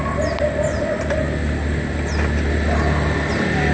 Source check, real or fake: real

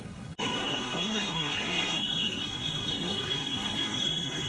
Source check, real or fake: fake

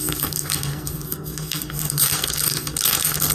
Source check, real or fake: fake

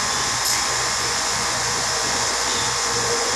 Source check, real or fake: fake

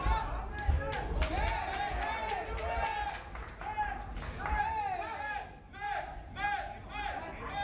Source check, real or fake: real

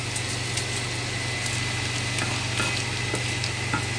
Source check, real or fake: real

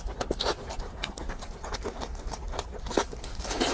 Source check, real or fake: real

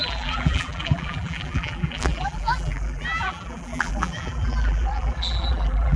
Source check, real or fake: fake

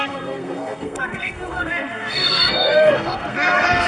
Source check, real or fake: fake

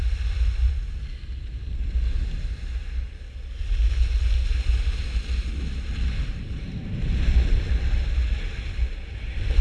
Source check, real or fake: real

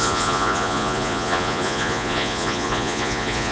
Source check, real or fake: fake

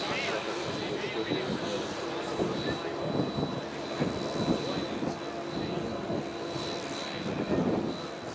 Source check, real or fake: real